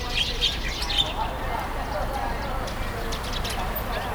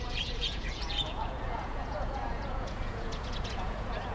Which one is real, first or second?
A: first